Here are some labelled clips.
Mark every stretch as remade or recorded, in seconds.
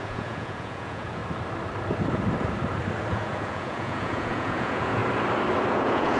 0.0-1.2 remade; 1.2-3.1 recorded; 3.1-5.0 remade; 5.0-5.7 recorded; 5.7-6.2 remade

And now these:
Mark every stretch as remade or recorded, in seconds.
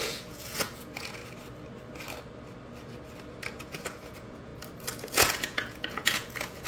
0.0-1.2 remade; 1.2-3.6 recorded; 3.6-4.5 remade; 4.5-5.1 recorded; 5.1-6.7 remade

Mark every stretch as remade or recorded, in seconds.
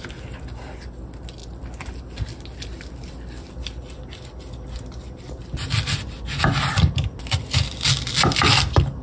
0.0-9.0 recorded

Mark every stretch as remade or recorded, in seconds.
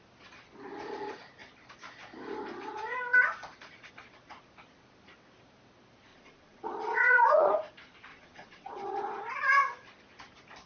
0.0-6.1 recorded; 6.1-7.5 remade; 7.5-8.1 recorded; 8.1-9.3 remade; 9.3-10.7 recorded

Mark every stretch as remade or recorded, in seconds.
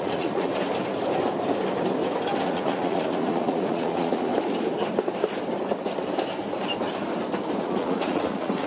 0.0-0.5 remade; 0.5-2.4 recorded; 2.4-4.3 remade; 4.3-7.6 recorded; 7.6-8.7 remade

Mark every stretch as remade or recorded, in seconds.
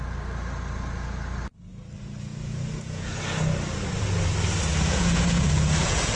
0.0-2.3 recorded; 2.3-3.2 remade; 3.2-4.7 recorded; 4.7-6.2 remade